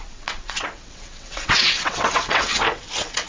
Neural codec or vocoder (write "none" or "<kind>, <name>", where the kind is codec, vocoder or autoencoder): vocoder, WaveNeXt